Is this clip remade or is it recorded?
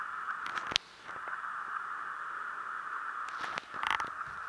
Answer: recorded